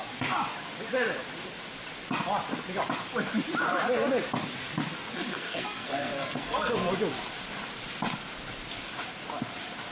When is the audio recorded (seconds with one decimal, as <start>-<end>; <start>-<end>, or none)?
0.0-5.3; 6.9-9.9